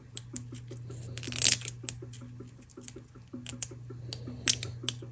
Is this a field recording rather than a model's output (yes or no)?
yes